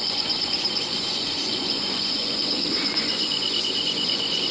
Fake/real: fake